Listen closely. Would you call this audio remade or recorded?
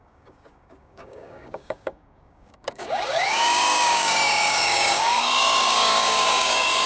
remade